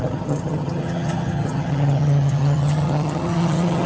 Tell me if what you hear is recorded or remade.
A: remade